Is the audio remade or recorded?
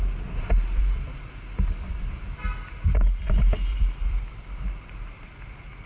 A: recorded